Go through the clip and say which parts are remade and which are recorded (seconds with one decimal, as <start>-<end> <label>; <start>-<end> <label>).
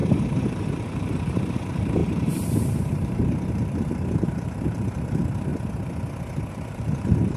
0.0-5.5 remade; 5.5-6.5 recorded; 6.5-7.4 remade